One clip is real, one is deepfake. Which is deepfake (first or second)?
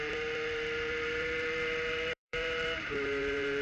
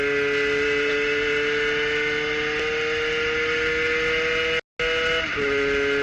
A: first